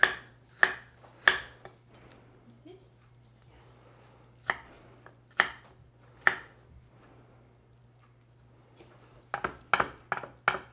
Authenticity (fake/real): real